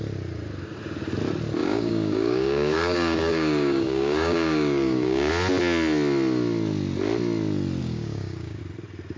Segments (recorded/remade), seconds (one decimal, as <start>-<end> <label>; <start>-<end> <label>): 0.0-1.6 recorded; 1.6-5.3 remade; 5.3-7.8 recorded; 7.8-8.6 remade; 8.6-9.2 recorded